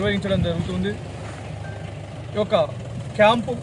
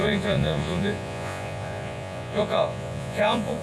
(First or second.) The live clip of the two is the first